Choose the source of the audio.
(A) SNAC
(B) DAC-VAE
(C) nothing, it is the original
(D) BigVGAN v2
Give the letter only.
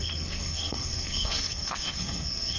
A